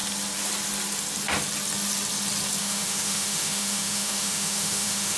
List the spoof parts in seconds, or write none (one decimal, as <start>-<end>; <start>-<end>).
2.6-5.2